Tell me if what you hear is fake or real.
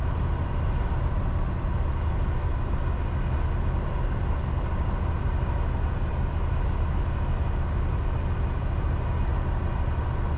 real